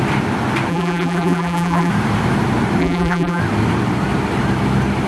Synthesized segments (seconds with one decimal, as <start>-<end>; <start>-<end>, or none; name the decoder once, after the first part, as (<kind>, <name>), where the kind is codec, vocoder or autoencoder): 0.7-1.9 (vocoder, BigVGAN v2); 2.8-3.4